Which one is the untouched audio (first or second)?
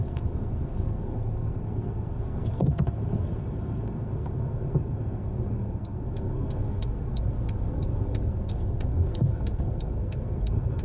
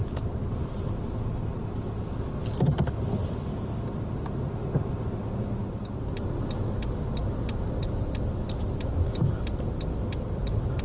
second